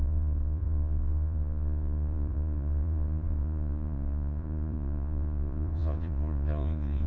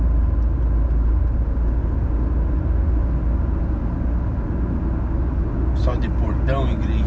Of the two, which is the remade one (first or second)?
first